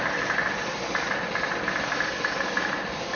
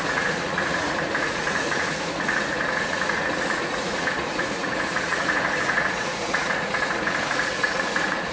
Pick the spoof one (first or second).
second